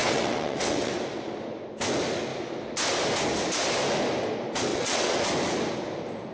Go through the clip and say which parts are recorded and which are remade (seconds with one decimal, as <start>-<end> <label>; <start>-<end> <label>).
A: 0.0-1.0 remade; 1.0-4.7 recorded; 4.7-5.2 remade; 5.2-6.3 recorded